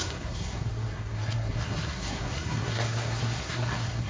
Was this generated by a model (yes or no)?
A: yes